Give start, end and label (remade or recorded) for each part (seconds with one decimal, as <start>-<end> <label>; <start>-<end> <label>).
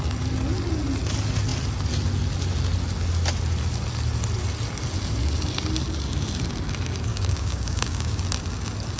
0.0-7.1 recorded; 7.1-8.2 remade; 8.2-9.0 recorded